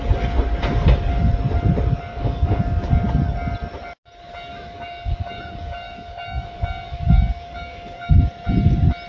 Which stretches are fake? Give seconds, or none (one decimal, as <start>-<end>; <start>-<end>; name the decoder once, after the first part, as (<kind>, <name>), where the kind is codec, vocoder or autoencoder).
2.1-2.9 (codec, DAC); 4.5-8.1